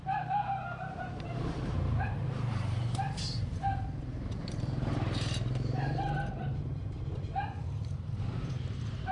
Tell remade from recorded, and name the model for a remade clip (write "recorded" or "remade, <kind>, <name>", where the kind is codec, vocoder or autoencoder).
remade, vocoder, BigVGAN v2